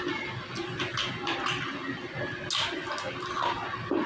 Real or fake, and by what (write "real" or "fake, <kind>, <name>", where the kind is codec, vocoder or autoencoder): real